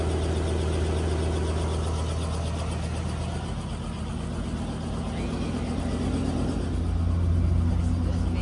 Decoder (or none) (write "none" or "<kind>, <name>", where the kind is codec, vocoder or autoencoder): none